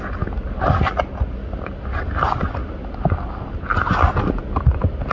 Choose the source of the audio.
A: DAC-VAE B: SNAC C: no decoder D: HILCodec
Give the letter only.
C